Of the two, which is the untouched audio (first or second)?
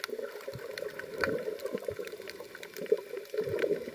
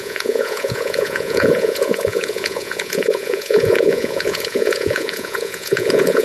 first